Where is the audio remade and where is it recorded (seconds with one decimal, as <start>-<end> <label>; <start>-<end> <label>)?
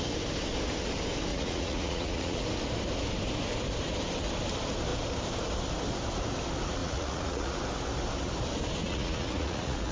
0.0-1.3 recorded; 1.3-2.4 remade; 2.4-6.8 recorded; 6.8-7.6 remade; 7.6-8.8 recorded; 8.8-9.9 remade